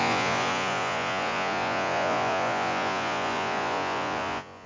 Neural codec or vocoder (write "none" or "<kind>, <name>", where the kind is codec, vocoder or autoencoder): vocoder, Vocos